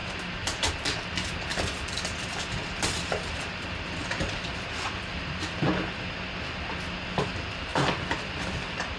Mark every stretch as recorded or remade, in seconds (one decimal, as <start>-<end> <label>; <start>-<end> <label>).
0.0-1.5 recorded; 1.5-6.0 remade; 6.0-7.7 recorded; 7.7-8.3 remade; 8.3-9.0 recorded

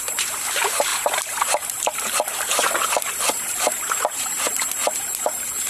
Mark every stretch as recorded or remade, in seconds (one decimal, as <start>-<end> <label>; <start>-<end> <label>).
0.0-5.7 remade